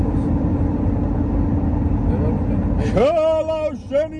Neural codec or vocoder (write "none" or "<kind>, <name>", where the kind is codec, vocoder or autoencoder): none